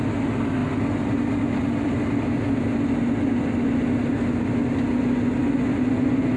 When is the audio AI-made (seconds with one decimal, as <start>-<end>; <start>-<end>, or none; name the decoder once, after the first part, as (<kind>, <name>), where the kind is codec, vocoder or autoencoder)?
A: none